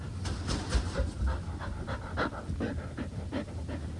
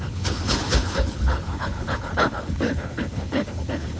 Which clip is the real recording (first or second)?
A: first